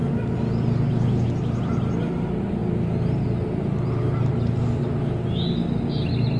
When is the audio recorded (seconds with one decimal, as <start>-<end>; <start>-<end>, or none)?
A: 0.0-6.4